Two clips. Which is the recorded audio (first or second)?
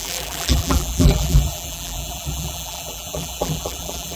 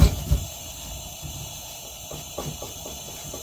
second